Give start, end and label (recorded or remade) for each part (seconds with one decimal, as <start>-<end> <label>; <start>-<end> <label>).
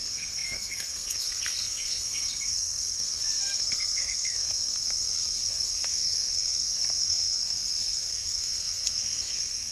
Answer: 0.0-9.7 remade